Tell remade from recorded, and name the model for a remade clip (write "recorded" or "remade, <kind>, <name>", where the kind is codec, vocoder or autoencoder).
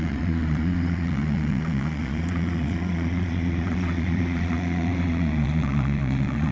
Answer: remade, vocoder, Vocos